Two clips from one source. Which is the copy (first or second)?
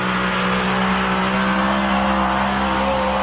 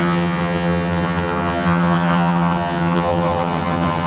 second